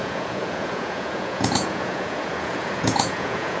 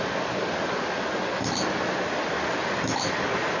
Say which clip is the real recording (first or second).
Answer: second